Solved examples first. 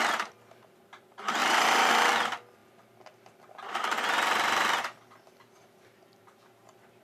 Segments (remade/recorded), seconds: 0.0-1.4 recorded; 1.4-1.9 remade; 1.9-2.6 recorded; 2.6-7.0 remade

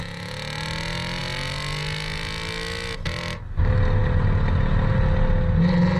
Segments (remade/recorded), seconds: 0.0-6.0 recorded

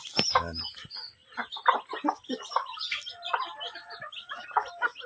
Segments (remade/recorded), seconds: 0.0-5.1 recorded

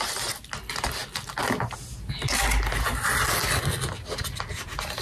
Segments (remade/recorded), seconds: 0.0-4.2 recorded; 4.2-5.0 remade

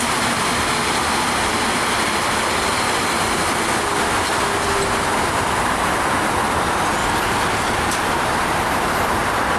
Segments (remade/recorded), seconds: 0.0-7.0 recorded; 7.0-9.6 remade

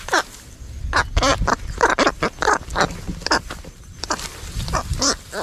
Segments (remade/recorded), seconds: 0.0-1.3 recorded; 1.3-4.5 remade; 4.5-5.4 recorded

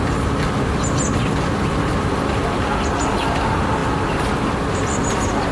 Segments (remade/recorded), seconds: 0.0-3.8 remade; 3.8-4.7 recorded; 4.7-5.5 remade

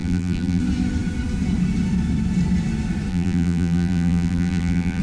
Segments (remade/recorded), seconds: 0.0-0.6 remade; 0.6-3.1 recorded; 3.1-5.0 remade